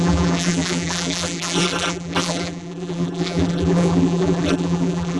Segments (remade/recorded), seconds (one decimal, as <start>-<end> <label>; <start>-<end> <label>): 0.0-5.2 remade